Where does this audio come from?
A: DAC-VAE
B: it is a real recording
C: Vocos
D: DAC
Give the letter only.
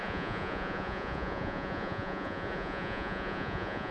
C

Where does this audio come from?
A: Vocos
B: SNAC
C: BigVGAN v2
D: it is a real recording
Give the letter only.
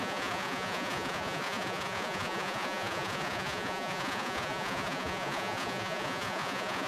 A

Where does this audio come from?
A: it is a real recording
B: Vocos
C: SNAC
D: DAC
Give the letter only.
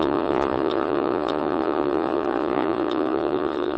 B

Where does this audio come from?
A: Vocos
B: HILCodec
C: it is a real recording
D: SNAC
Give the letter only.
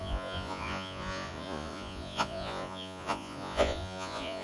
A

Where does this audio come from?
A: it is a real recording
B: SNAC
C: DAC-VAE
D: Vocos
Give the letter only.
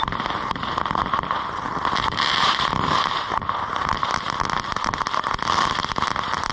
A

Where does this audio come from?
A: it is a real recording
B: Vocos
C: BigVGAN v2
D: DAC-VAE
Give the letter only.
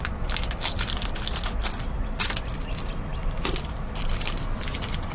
A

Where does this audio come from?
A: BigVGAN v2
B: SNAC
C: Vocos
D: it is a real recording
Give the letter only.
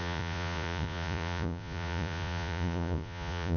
C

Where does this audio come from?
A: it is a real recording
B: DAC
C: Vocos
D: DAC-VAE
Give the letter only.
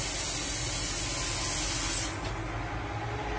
A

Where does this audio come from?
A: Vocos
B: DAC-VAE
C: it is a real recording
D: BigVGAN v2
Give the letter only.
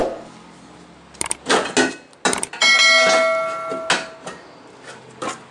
C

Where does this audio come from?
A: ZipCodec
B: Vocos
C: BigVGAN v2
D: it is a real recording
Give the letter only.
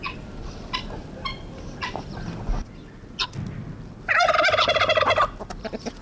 D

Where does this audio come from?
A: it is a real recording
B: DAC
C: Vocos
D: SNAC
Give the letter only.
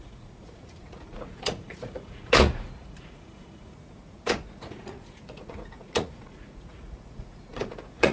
C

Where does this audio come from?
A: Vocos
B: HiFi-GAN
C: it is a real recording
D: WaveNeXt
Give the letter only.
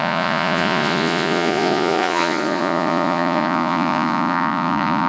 A